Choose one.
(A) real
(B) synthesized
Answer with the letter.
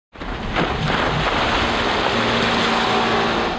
A